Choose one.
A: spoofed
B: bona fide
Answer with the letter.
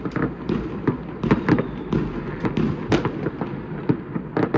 B